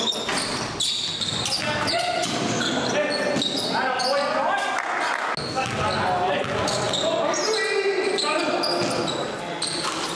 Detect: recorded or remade recorded